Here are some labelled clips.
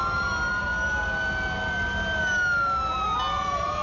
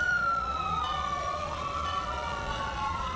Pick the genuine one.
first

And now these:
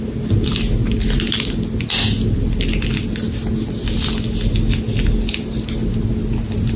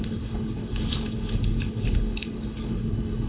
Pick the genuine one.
first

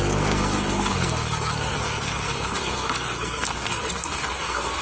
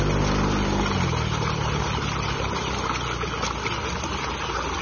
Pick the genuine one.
second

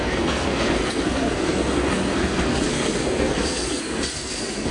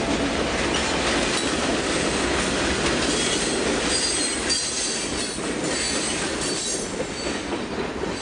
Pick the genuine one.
second